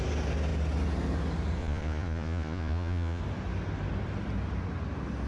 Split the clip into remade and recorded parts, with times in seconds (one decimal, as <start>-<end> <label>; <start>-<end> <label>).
0.0-1.6 recorded; 1.6-3.2 remade; 3.2-5.3 recorded